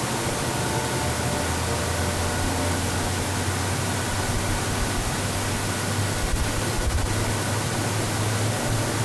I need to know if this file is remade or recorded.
recorded